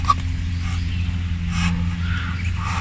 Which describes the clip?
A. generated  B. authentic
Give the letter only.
B